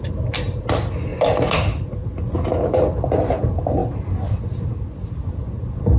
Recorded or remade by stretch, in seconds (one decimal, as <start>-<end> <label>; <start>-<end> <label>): 0.0-6.0 recorded